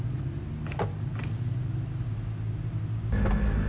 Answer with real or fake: real